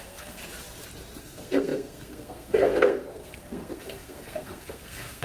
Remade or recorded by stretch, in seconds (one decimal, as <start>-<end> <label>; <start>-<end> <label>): 0.0-0.4 remade; 0.4-1.2 recorded; 1.2-5.2 remade